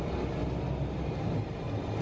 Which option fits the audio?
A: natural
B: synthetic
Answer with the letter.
A